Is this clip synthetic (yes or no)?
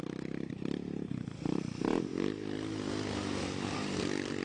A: no